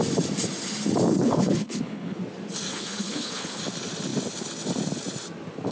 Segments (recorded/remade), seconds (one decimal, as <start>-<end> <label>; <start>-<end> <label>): 0.0-1.1 recorded; 1.1-2.2 remade; 2.2-2.7 recorded; 2.7-3.6 remade; 3.6-5.7 recorded